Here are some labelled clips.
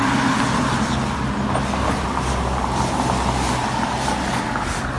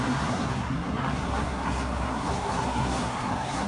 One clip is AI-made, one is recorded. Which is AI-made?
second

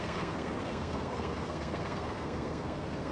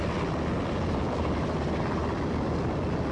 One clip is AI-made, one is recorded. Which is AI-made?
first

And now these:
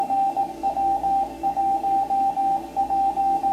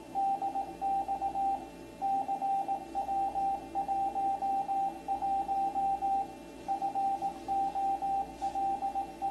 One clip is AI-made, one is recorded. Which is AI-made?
first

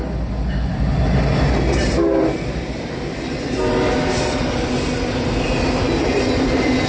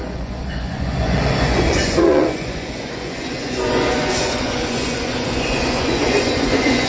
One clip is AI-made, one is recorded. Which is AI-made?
second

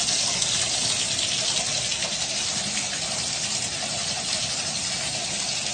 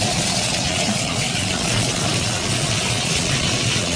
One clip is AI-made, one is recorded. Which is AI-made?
second